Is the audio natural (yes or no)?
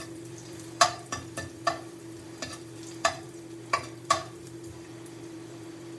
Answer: no